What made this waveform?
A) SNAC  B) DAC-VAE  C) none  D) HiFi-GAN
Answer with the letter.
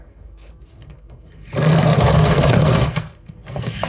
A